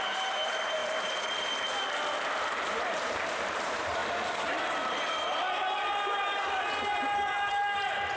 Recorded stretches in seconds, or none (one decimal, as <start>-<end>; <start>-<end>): 0.8-2.4; 4.0-7.5